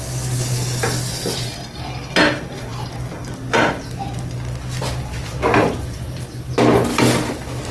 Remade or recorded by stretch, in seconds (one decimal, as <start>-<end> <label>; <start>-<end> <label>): 0.0-7.7 recorded